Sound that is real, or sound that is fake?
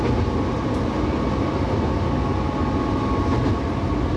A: real